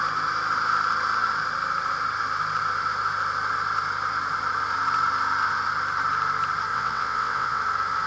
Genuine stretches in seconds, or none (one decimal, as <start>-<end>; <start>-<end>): 0.0-6.7; 7.6-8.1